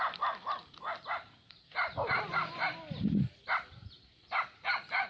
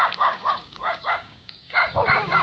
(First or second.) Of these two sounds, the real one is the first